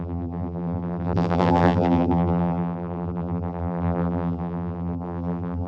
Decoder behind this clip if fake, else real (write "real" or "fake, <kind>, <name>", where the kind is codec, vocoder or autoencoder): fake, vocoder, BigVGAN v2